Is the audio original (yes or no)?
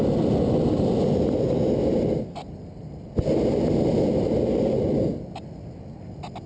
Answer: yes